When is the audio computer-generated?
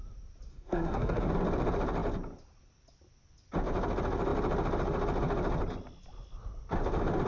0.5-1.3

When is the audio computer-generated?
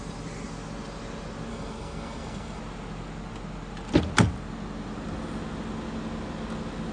1.5-2.6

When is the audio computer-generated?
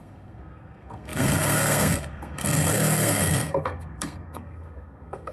0.0-5.3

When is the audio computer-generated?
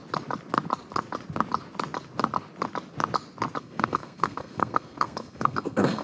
3.6-6.0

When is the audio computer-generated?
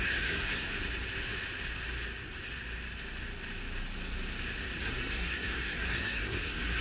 0.0-0.7; 4.8-6.8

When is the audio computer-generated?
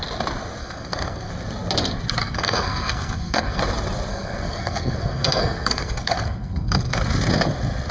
0.6-1.3; 2.2-3.6; 4.1-7.0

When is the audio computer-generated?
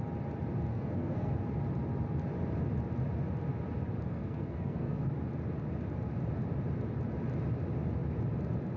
0.7-1.3; 4.1-5.1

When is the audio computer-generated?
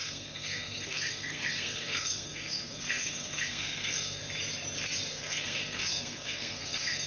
0.0-4.2; 5.1-7.1